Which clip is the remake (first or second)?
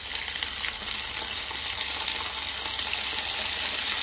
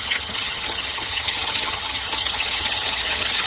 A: second